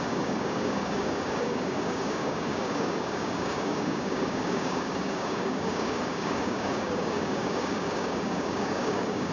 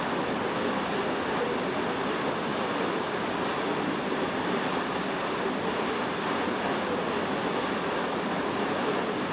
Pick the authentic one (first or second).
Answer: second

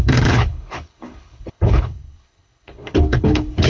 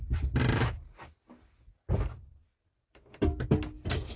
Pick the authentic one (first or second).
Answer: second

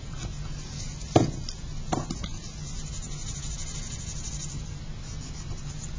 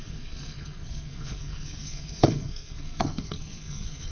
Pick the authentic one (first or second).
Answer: first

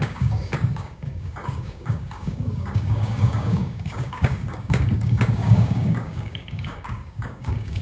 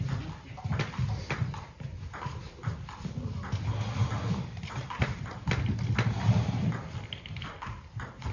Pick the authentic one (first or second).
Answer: second